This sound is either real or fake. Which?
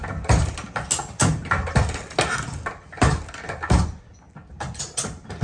real